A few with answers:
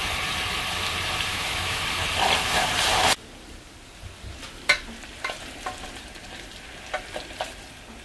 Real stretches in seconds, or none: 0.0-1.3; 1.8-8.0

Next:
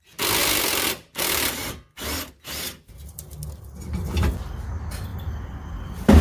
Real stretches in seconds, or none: 0.0-6.2

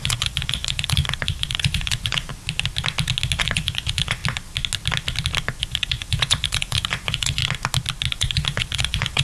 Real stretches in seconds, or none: 2.3-3.4; 4.2-5.6; 7.4-8.1

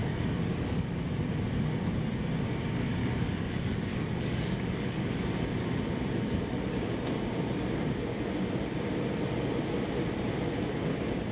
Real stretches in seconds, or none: 0.9-3.0; 5.2-11.3

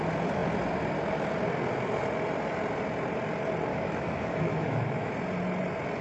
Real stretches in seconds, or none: 0.0-3.7; 5.1-6.0

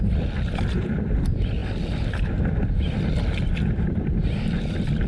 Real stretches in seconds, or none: 0.0-5.1